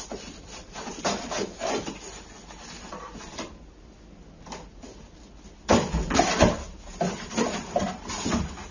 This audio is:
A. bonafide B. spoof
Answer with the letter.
A